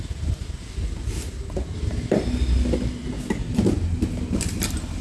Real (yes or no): yes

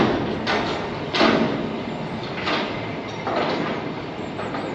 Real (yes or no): yes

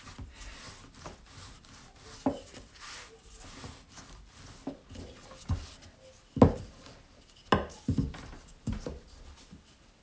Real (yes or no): yes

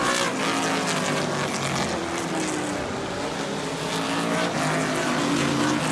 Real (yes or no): yes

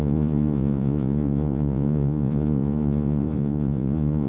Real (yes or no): no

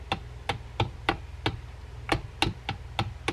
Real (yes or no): yes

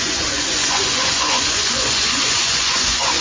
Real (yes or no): no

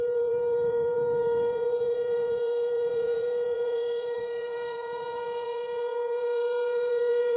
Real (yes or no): no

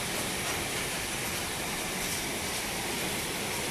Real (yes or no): yes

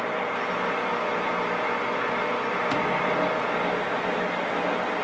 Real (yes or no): yes